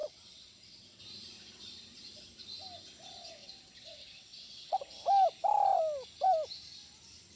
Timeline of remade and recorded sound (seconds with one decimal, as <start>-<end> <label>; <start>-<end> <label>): 0.0-1.0 remade; 1.0-3.4 recorded; 3.4-4.8 remade; 4.8-7.4 recorded